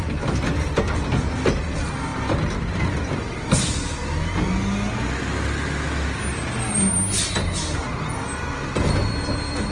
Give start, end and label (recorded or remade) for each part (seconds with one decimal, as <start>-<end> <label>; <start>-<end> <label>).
0.0-9.7 recorded